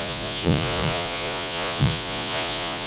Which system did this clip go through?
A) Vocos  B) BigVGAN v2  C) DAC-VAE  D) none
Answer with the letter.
A